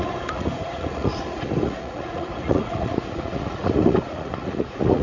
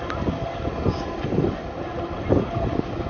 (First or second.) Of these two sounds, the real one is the second